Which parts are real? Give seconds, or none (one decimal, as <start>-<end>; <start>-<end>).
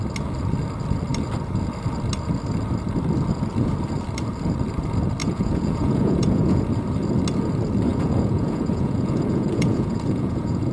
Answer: 0.0-5.2; 6.6-7.9